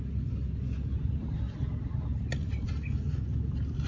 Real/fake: real